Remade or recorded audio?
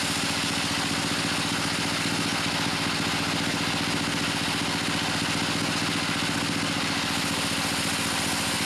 recorded